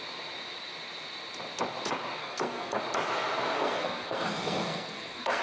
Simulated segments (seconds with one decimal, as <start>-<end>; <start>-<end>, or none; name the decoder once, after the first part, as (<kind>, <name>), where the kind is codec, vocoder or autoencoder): 2.2-2.8 (codec, SNAC); 3.5-5.4